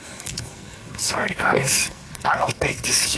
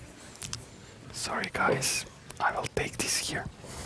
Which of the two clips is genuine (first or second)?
second